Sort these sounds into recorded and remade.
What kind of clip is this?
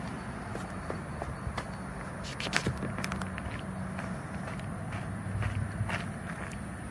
recorded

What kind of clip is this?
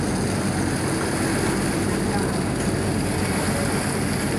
recorded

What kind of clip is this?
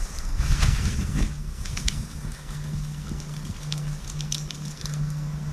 remade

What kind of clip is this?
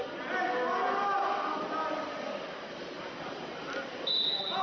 recorded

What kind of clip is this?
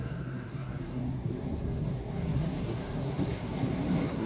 remade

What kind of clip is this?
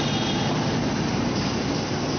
recorded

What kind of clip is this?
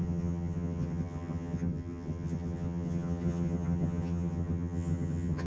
remade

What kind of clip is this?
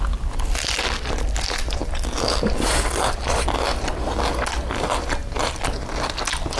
recorded